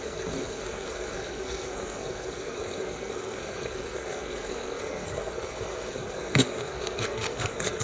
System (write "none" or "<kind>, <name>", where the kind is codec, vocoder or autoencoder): codec, SNAC